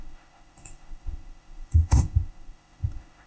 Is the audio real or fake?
fake